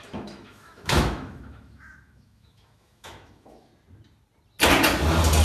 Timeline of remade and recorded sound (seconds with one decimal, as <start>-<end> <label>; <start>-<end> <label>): 0.0-3.7 remade; 3.7-5.4 recorded